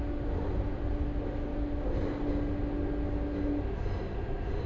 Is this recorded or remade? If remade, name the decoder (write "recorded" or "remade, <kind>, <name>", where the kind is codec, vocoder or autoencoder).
recorded